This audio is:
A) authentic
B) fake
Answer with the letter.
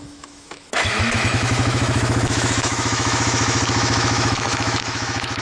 B